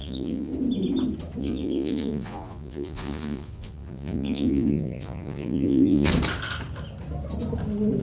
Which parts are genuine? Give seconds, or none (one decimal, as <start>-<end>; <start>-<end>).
0.5-1.4; 6.1-8.0

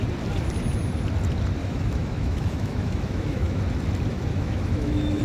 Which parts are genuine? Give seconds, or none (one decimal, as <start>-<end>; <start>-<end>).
0.0-1.6; 3.6-4.1

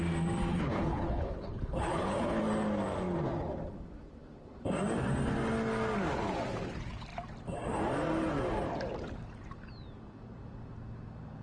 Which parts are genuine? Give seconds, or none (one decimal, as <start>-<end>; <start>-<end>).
0.0-0.5; 2.4-11.4

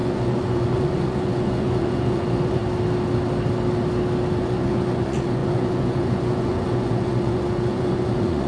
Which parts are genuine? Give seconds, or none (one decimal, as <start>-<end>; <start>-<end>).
2.6-4.4

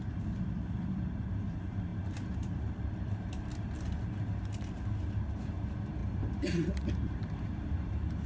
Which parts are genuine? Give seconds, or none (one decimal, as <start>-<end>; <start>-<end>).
0.0-6.0

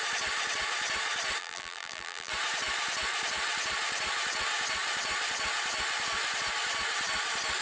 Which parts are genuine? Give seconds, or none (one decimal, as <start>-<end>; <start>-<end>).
0.0-1.4; 2.3-7.6

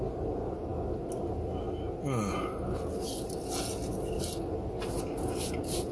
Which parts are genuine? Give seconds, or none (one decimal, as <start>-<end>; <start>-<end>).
0.0-5.9